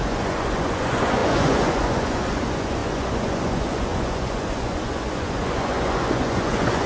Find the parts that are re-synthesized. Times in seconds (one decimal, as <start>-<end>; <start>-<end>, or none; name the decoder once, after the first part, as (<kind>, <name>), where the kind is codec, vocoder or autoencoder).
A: 0.0-6.9 (vocoder, Vocos)